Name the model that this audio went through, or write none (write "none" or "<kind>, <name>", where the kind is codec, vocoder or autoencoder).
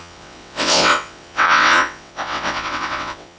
vocoder, WaveNeXt